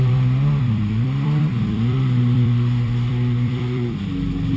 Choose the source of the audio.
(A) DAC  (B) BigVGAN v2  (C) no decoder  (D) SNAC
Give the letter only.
B